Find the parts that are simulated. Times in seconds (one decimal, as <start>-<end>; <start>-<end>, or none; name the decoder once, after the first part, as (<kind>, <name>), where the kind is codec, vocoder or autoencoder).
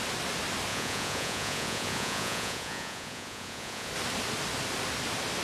0.7-3.9 (vocoder, Vocos)